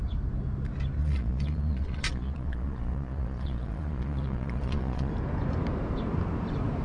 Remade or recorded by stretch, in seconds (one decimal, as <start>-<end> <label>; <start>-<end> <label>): 0.0-1.0 recorded; 1.0-5.1 remade; 5.1-6.8 recorded